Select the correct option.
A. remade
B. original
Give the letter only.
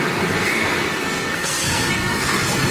A